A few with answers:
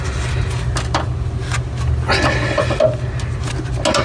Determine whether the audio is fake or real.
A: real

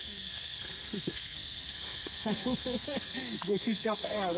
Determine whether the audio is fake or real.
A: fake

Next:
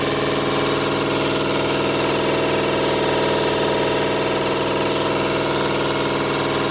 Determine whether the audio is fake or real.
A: real